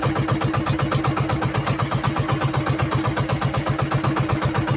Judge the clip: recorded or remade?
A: recorded